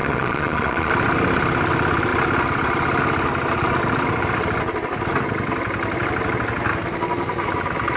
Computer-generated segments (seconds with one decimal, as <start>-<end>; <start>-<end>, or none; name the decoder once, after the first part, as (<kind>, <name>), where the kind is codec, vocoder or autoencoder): 0.0-0.9 (vocoder, Vocos)